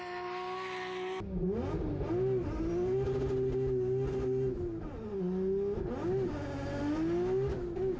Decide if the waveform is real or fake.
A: real